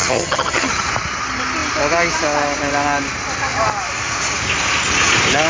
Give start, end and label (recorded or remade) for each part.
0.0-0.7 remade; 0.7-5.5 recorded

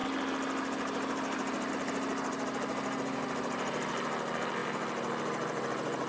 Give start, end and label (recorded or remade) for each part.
0.0-6.1 recorded